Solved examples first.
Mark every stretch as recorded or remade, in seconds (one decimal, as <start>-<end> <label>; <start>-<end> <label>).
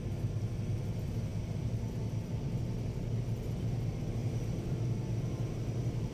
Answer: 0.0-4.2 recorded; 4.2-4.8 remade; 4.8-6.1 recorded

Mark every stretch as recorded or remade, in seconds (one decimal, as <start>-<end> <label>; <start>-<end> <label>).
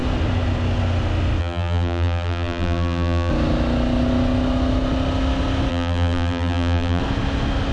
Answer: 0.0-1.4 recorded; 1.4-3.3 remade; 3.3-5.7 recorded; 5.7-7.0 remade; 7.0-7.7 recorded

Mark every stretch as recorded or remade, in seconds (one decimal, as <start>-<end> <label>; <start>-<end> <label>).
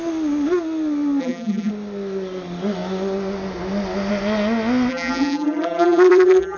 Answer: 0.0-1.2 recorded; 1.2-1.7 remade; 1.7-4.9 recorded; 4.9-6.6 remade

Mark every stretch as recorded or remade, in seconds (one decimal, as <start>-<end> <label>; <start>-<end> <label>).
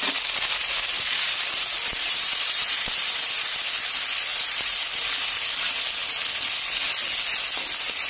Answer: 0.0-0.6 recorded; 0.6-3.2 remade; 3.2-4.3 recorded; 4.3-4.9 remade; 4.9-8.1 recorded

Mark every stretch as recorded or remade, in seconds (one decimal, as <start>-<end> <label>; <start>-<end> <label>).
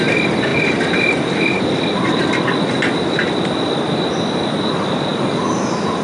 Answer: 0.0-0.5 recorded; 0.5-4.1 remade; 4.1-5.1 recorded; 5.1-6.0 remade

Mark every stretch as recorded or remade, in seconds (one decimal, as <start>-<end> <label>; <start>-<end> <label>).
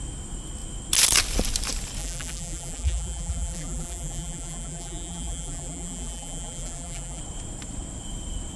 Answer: 0.0-2.0 recorded; 2.0-7.2 remade; 7.2-8.6 recorded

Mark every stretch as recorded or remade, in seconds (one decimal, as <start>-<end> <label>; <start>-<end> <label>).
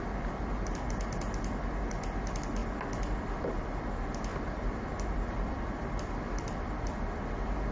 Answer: 0.0-2.6 recorded; 2.6-3.9 remade; 3.9-4.3 recorded; 4.3-7.0 remade; 7.0-7.7 recorded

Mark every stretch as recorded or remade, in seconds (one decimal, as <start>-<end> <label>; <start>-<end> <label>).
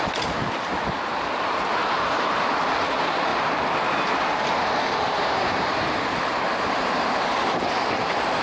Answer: 0.0-0.7 remade; 0.7-1.5 recorded; 1.5-8.4 remade